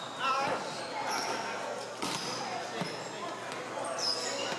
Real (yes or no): yes